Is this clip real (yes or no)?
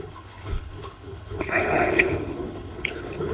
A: no